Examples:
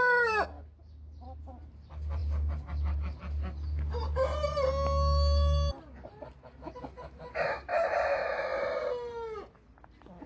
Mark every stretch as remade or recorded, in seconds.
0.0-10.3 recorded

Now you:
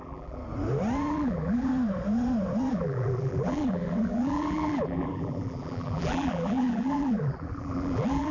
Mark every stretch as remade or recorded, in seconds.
0.0-0.4 remade; 0.4-1.1 recorded; 1.1-1.7 remade; 1.7-2.7 recorded; 2.7-8.3 remade

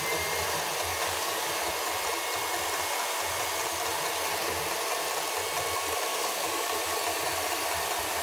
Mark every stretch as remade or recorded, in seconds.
0.0-0.9 recorded; 0.9-1.5 remade; 1.5-6.1 recorded; 6.1-6.8 remade; 6.8-8.2 recorded